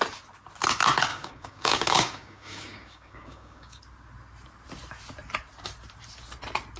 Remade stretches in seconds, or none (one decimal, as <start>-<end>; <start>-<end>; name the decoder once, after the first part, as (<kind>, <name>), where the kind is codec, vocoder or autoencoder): 1.1-3.8 (codec, DAC)